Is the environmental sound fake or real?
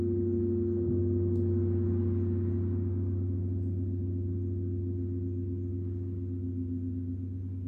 real